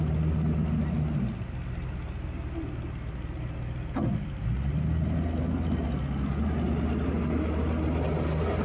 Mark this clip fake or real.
real